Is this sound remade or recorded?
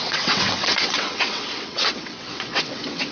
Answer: remade